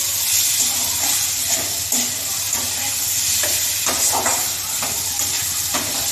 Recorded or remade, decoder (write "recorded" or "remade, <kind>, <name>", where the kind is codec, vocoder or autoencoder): recorded